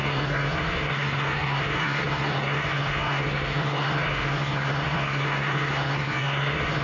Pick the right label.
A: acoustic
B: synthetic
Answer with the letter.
B